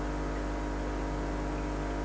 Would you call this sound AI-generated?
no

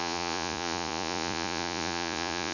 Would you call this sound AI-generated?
yes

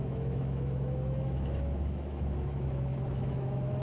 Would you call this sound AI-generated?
yes